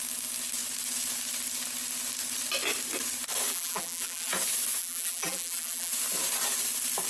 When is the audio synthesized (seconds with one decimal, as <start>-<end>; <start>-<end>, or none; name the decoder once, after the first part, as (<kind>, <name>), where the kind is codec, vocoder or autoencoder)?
3.5-4.3 (vocoder, BigVGAN v2); 4.8-5.9